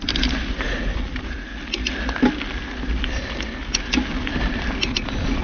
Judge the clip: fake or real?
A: real